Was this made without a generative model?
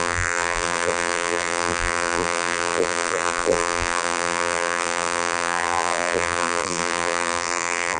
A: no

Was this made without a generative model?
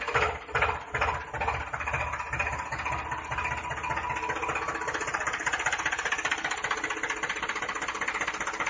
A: yes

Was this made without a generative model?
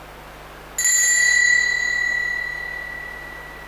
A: yes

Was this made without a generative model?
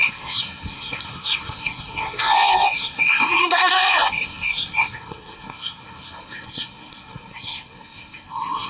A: no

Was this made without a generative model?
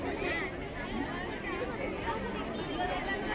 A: yes